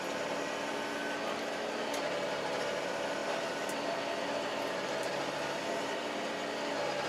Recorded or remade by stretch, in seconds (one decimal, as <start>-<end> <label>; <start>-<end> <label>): 0.0-3.2 recorded; 3.2-4.0 remade; 4.0-4.5 recorded; 4.5-6.3 remade; 6.3-7.1 recorded